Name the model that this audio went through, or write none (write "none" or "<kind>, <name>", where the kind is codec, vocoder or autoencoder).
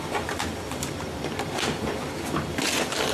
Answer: none